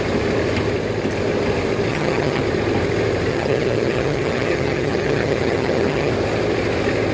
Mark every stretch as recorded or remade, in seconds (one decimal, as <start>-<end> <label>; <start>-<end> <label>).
0.0-1.9 recorded; 1.9-2.4 remade; 2.4-3.3 recorded; 3.3-6.1 remade; 6.1-7.1 recorded

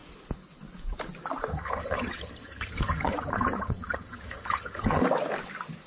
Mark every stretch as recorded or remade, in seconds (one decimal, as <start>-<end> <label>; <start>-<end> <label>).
0.0-1.5 recorded; 1.5-5.0 remade; 5.0-5.9 recorded

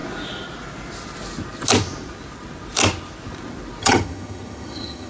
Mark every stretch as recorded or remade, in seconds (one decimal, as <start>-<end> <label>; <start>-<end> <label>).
0.0-3.8 recorded; 3.8-5.1 remade

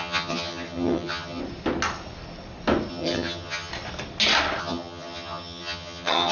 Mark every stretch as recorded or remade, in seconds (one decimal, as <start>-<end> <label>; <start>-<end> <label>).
0.0-1.4 remade; 1.4-2.9 recorded; 2.9-3.7 remade; 3.7-4.6 recorded; 4.6-6.3 remade